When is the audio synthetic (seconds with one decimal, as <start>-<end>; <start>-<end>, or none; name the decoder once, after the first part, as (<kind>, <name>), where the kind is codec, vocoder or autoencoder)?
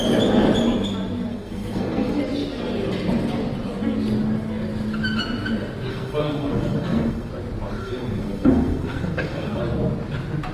1.3-2.2 (codec, SNAC); 5.9-7.3; 7.8-9.6